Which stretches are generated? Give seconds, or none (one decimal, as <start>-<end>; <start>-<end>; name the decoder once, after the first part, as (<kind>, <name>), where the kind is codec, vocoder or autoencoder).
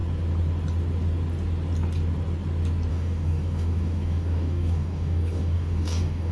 2.9-6.3 (codec, DAC)